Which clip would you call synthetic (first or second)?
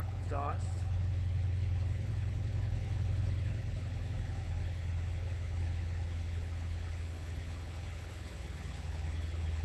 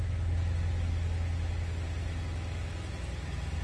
first